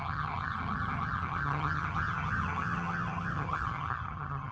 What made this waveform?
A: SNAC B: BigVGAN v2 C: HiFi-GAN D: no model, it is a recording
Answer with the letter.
C